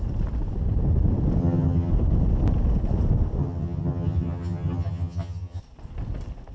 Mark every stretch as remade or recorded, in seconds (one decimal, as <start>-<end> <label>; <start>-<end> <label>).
0.0-1.4 recorded; 1.4-1.9 remade; 1.9-3.4 recorded; 3.4-5.6 remade; 5.6-6.5 recorded